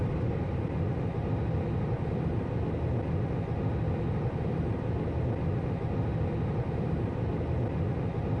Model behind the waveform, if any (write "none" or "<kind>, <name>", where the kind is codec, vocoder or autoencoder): none